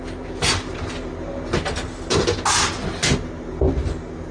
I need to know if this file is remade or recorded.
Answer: recorded